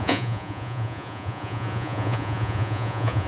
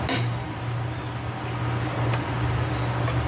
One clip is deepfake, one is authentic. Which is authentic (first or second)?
second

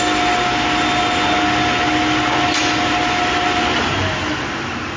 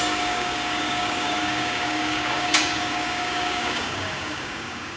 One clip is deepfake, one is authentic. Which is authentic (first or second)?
first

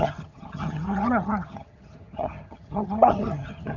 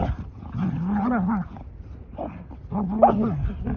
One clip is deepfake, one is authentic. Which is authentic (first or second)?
second